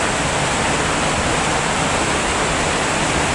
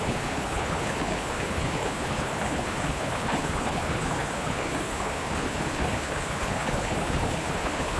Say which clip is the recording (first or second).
first